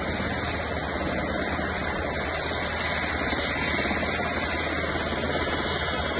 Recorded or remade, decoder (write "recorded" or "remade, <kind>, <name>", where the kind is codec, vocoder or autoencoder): recorded